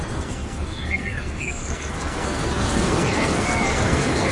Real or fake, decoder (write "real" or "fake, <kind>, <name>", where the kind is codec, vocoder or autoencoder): fake, codec, SNAC